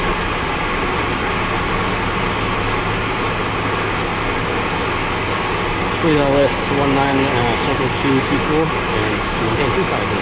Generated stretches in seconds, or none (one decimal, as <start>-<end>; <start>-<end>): 7.7-8.3; 9.0-9.6